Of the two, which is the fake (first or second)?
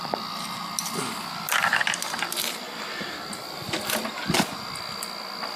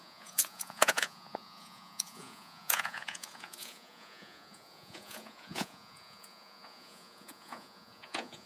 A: second